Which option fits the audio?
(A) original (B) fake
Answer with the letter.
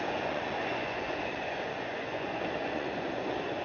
B